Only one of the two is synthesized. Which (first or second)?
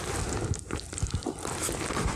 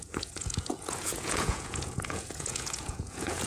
second